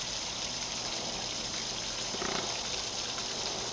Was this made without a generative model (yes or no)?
yes